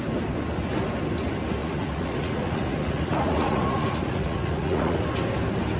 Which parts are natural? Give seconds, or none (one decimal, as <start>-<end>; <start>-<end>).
0.0-1.6; 5.0-5.8